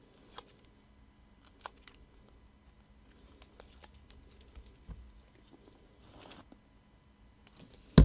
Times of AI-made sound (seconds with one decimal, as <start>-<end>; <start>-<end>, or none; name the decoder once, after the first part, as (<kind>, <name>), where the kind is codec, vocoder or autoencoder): none